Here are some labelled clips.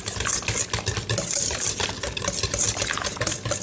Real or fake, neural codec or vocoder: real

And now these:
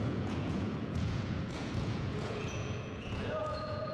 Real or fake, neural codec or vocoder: fake, vocoder, Vocos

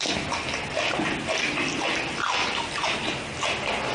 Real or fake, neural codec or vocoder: real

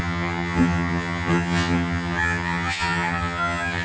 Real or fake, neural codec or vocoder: fake, vocoder, HiFi-GAN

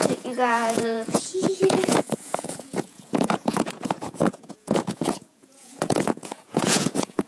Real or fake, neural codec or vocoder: fake, vocoder, Vocos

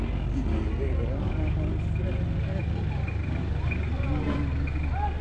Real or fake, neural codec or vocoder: real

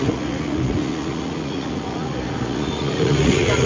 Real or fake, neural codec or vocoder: fake, vocoder, Vocos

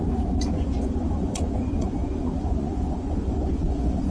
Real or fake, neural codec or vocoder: fake, vocoder, Vocos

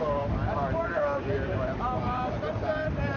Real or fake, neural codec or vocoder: real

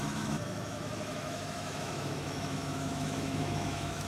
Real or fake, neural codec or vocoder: fake, autoencoder, DAC-VAE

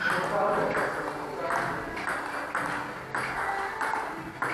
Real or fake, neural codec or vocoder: real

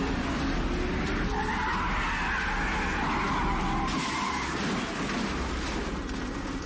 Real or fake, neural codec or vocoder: real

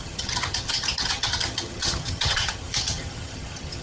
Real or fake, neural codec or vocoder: fake, vocoder, HiFi-GAN